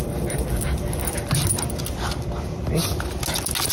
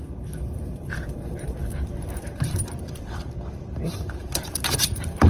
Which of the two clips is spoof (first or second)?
second